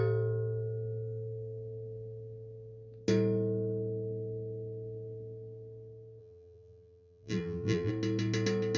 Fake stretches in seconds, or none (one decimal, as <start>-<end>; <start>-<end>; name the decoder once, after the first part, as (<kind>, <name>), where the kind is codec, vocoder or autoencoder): 6.2-7.9 (vocoder, BigVGAN v2)